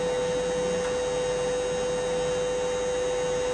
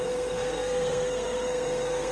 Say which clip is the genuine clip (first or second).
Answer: first